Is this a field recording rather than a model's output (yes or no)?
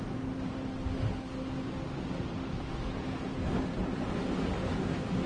yes